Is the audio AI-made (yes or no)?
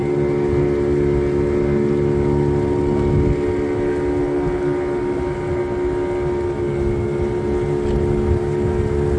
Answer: no